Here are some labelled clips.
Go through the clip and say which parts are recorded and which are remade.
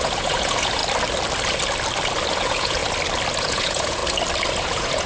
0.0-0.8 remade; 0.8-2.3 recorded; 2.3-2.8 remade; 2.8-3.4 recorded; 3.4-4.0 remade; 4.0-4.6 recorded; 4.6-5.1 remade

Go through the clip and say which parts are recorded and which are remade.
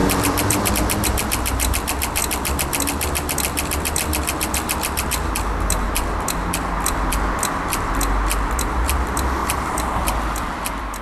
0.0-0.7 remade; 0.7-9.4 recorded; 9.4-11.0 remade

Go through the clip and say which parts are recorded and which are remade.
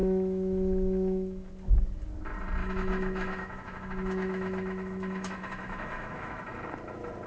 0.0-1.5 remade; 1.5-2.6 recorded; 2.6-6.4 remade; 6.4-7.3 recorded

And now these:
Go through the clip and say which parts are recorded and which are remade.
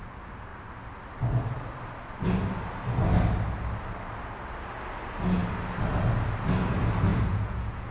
0.0-7.1 recorded; 7.1-7.9 remade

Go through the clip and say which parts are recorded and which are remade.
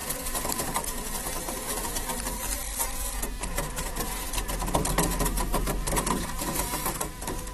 0.0-2.1 remade; 2.1-7.5 recorded